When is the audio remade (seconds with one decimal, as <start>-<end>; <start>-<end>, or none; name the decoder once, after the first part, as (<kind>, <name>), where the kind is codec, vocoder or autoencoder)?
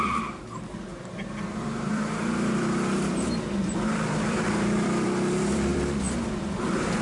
0.0-7.0 (vocoder, BigVGAN v2)